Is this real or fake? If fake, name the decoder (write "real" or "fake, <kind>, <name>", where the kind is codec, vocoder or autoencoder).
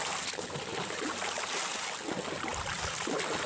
real